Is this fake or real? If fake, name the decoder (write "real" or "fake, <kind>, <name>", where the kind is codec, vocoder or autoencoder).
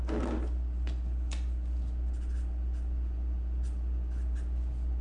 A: real